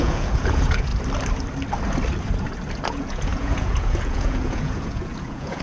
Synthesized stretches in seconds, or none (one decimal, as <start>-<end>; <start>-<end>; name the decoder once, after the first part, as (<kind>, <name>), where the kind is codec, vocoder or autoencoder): 0.0-0.9 (vocoder, Vocos); 2.9-5.6